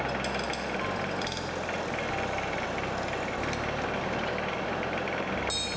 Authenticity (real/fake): real